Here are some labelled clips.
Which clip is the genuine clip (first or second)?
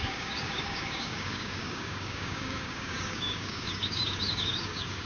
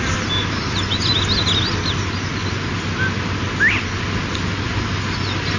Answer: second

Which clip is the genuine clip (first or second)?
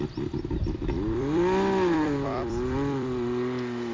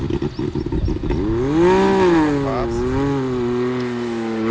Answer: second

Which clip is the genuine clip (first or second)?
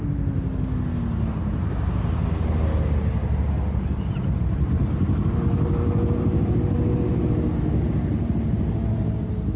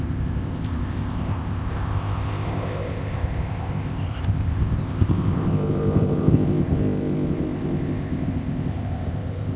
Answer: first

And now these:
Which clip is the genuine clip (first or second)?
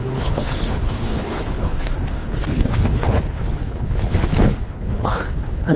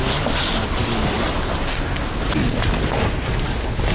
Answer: second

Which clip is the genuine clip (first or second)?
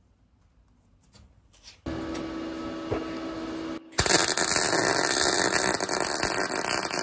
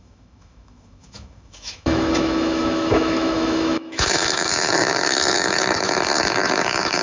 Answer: first